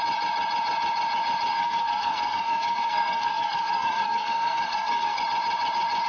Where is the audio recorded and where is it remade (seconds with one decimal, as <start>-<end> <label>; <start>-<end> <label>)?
0.0-1.5 recorded; 1.5-5.2 remade; 5.2-6.1 recorded